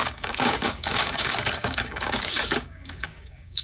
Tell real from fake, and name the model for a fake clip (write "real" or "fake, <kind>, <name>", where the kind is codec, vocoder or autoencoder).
fake, codec, DAC